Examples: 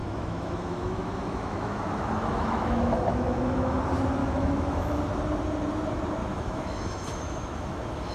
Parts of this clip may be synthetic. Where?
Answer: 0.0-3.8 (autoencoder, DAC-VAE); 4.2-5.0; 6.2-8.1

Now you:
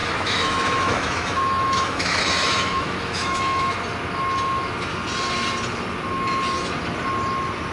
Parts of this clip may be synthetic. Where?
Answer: 0.0-3.7 (autoencoder, DAC-VAE)

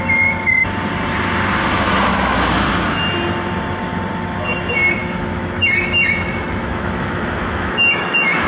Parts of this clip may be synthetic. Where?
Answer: 5.0-8.5 (autoencoder, DAC-VAE)

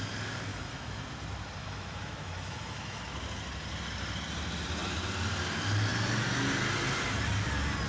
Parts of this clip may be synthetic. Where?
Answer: 0.5-1.0 (autoencoder, DAC-VAE); 1.6-3.0

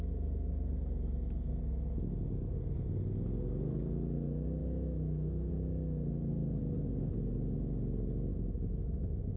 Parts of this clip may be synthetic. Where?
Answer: 4.6-5.5 (autoencoder, DAC-VAE); 8.3-9.4